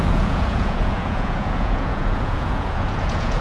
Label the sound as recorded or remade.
remade